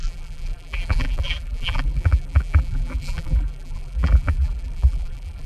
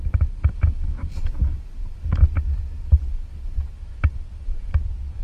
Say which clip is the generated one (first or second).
first